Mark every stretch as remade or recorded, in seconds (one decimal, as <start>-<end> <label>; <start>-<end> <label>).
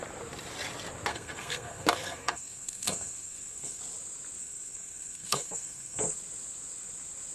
0.0-1.1 recorded; 1.1-3.8 remade; 3.8-4.4 recorded; 4.4-6.0 remade; 6.0-7.3 recorded